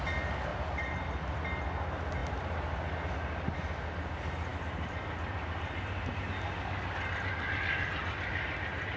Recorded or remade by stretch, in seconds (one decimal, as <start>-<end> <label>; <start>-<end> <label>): 0.0-0.5 recorded; 0.5-1.4 remade; 1.4-2.2 recorded; 2.2-3.1 remade; 3.1-9.0 recorded